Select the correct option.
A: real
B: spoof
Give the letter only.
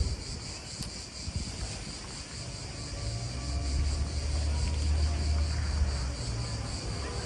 A